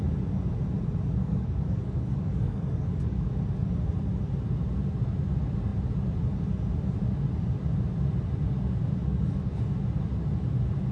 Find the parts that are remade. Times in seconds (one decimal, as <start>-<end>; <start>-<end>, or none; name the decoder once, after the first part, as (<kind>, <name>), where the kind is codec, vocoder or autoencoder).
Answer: 1.2-3.2 (codec, DAC); 9.0-9.6